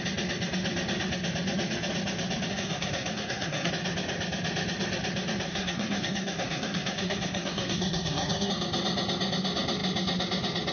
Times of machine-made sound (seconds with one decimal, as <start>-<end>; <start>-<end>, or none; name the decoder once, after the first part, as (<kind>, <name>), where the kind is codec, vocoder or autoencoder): 2.5-3.7 (codec, SNAC); 5.5-8.5